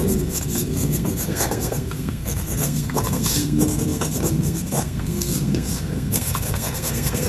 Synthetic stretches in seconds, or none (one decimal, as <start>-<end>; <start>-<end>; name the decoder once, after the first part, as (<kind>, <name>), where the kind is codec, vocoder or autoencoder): 0.0-7.3 (codec, SNAC)